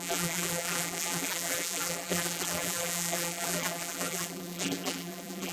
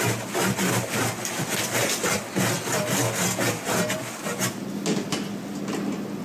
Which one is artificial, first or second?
first